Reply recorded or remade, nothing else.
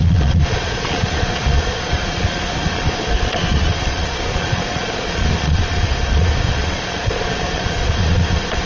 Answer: remade